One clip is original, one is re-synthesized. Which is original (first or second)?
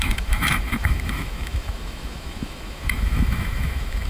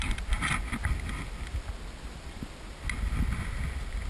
second